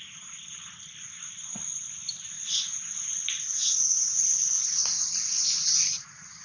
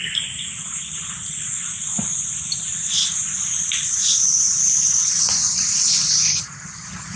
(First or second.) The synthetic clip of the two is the second